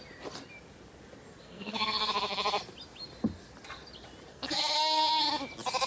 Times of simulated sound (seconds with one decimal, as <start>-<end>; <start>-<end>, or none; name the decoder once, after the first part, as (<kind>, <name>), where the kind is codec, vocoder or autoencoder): 1.4-2.1 (codec, SNAC); 4.3-5.2